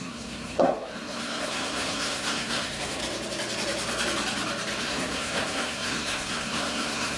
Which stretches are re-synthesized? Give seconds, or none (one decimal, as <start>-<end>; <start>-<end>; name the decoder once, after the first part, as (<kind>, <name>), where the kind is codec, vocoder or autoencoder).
0.0-3.0 (codec, SNAC); 4.8-7.2